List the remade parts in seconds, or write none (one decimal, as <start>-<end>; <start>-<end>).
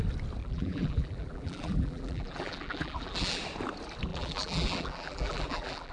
0.4-3.4; 4.1-5.9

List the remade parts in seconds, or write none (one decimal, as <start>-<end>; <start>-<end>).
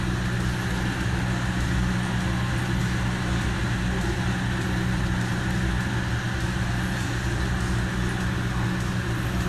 none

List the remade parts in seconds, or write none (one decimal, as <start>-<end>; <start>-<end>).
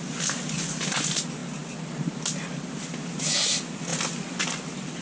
none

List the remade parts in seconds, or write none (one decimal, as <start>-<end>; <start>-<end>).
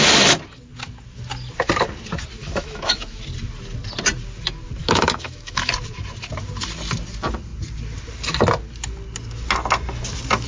2.4-3.2; 4.8-5.7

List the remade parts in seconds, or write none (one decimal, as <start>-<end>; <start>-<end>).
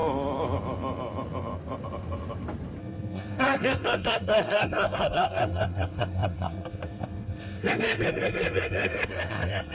2.8-9.7